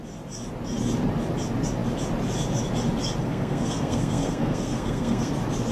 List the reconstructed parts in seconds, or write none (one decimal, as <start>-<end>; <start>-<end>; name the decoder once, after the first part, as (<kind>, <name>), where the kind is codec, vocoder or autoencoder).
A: 3.2-5.3 (codec, SNAC)